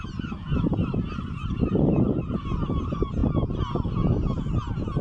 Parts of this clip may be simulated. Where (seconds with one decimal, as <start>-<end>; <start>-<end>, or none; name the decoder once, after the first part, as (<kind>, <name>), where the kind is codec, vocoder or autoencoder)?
0.8-2.2 (vocoder, BigVGAN v2)